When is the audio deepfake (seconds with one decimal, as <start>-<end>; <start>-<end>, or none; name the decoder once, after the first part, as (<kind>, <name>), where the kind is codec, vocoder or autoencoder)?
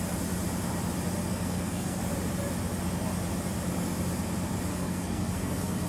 1.3-2.0 (codec, SNAC); 4.7-5.9